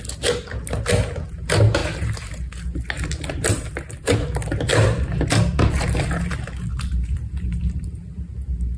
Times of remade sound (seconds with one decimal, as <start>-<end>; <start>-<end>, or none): 1.8-2.3; 3.5-4.2; 4.7-8.3